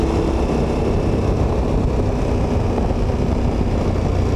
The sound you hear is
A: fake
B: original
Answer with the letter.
B